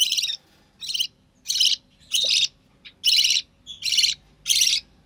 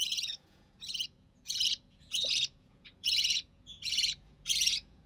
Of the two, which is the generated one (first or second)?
second